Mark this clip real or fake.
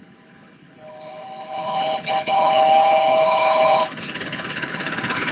fake